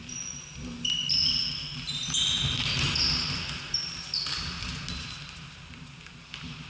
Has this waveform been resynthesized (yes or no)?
no